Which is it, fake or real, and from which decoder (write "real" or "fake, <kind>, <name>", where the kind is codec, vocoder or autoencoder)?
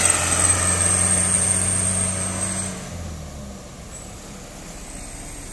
real